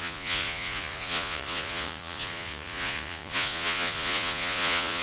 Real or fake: fake